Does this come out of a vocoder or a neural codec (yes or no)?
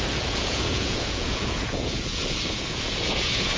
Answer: yes